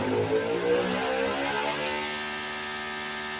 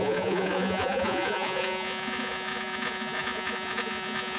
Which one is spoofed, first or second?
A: second